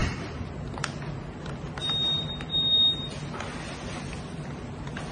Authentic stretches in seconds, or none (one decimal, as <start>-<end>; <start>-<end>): 0.0-5.1